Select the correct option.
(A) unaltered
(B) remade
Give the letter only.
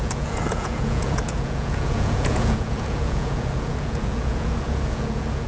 B